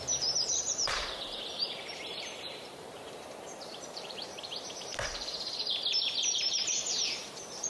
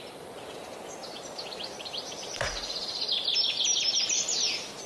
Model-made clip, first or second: first